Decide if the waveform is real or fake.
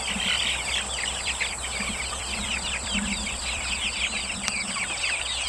fake